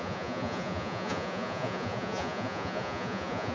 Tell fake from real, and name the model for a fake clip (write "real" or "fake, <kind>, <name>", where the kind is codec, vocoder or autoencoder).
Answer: fake, vocoder, Vocos